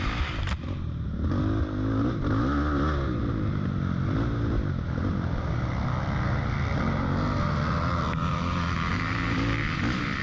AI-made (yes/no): no